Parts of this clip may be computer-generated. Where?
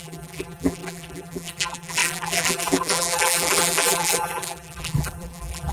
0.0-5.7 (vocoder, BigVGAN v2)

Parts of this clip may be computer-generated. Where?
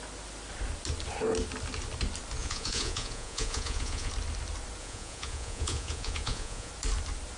2.4-4.1 (vocoder, Vocos); 4.8-6.7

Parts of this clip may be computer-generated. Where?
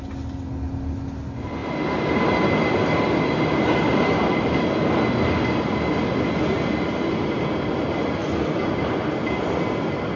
none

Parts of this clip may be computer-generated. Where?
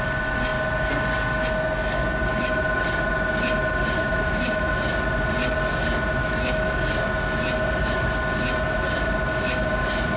4.0-4.7 (autoencoder, DAC-VAE); 6.2-7.0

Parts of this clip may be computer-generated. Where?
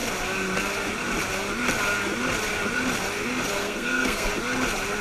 3.6-4.3 (codec, SNAC)